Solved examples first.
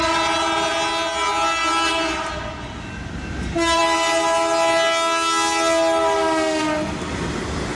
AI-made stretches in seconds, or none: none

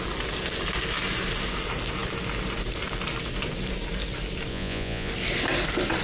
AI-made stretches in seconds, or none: 4.5-5.1 (vocoder, Vocos)

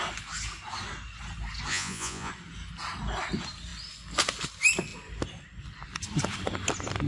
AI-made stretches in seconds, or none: 1.7-2.3 (vocoder, Vocos)

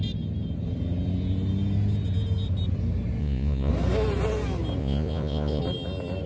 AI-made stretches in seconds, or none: 3.2-3.7 (vocoder, Vocos); 4.8-5.6

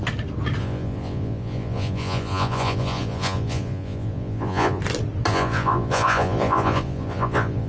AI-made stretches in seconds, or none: 0.6-4.8 (vocoder, Vocos); 5.3-7.7

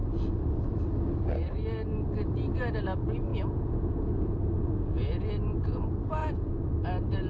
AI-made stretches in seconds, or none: 3.3-5.3 (vocoder, Vocos); 6.2-6.7

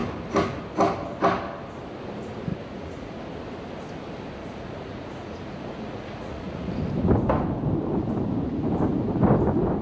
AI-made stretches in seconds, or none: 2.5-3.2 (vocoder, Vocos); 4.4-6.7

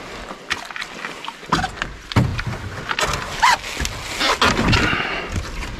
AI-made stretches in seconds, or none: none